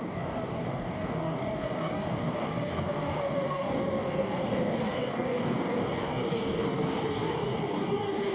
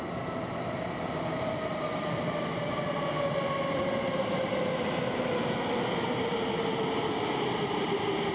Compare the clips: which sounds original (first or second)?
second